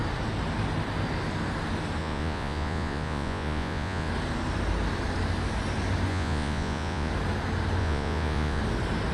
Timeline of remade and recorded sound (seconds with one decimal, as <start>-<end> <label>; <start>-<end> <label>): 0.0-2.0 recorded; 2.0-4.1 remade; 4.1-6.1 recorded; 6.1-7.1 remade; 7.1-7.8 recorded; 7.8-8.6 remade; 8.6-9.1 recorded